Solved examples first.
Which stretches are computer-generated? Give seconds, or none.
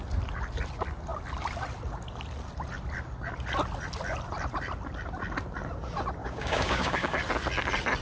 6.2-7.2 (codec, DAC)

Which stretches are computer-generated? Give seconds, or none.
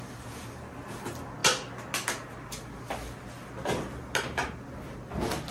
none